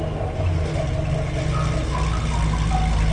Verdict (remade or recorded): recorded